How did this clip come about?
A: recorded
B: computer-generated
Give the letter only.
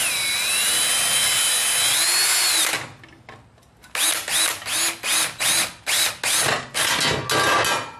A